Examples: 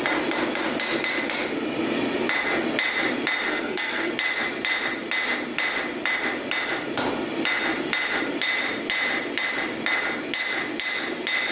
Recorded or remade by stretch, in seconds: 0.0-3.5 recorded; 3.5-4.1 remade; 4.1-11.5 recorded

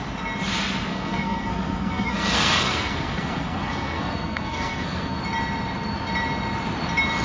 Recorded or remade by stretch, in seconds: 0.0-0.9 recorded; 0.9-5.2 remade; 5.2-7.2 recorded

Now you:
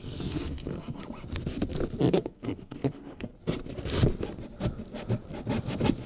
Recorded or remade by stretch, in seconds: 0.0-1.0 remade; 1.0-2.1 recorded; 2.1-3.3 remade; 3.3-6.1 recorded

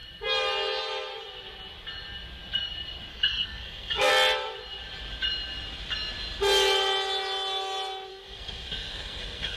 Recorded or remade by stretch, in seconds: 0.0-3.1 recorded; 3.1-4.1 remade; 4.1-8.1 recorded; 8.1-9.6 remade